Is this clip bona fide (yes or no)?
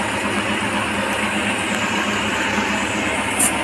yes